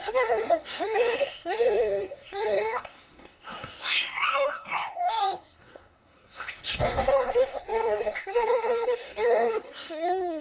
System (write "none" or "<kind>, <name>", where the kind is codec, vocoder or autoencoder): codec, SNAC